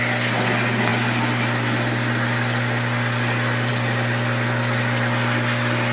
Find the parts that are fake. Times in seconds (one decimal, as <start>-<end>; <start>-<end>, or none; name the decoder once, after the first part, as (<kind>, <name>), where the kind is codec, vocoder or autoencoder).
none